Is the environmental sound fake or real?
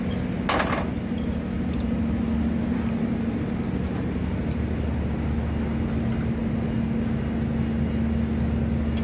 real